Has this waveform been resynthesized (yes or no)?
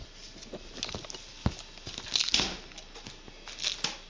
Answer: no